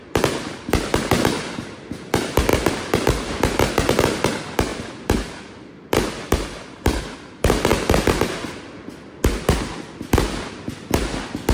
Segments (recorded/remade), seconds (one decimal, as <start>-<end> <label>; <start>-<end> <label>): 0.0-4.7 recorded; 4.7-7.0 remade; 7.0-11.5 recorded